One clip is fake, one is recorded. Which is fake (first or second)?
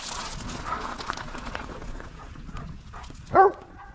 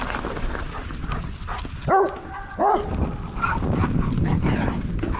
first